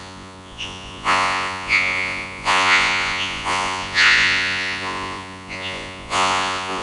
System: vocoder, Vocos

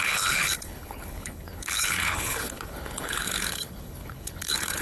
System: codec, HILCodec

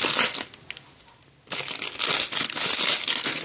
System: none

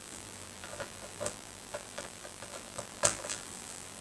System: vocoder, BigVGAN v2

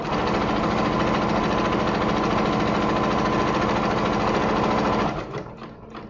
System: none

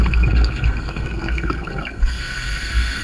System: codec, SNAC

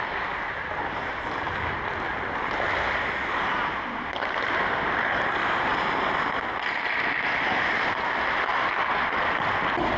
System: none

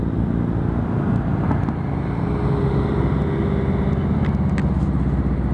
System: none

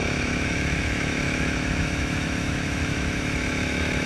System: autoencoder, DAC-VAE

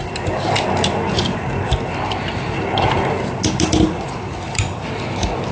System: none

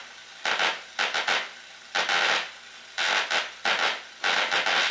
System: none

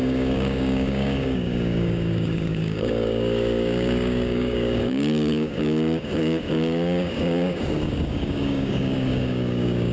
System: codec, DAC